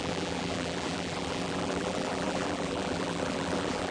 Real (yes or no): no